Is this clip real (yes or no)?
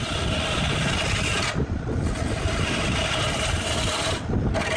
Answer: yes